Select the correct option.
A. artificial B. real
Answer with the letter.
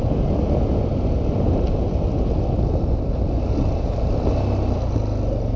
B